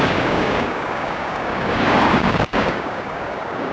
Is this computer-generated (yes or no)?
yes